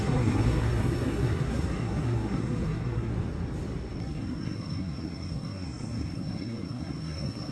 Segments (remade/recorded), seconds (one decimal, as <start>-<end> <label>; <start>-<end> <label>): 0.0-3.1 remade; 3.1-4.0 recorded; 4.0-7.5 remade